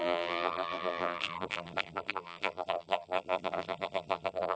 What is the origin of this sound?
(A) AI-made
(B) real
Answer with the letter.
A